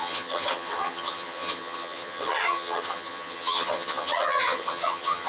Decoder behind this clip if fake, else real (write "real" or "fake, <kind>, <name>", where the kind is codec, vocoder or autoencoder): fake, vocoder, HiFi-GAN